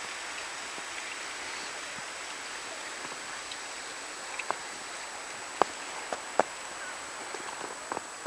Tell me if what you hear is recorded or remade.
recorded